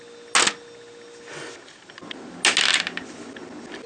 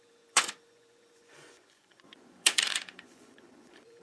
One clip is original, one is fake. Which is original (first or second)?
first